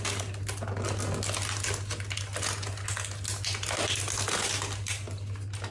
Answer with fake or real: real